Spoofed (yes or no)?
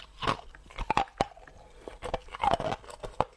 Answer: no